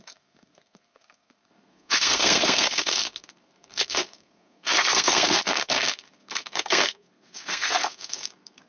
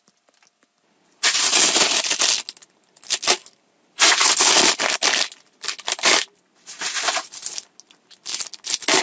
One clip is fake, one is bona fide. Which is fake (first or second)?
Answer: first